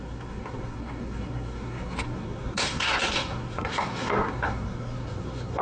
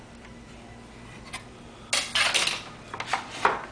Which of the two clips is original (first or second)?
second